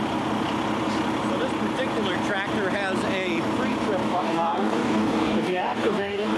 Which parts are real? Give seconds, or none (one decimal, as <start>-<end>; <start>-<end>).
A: 0.0-4.0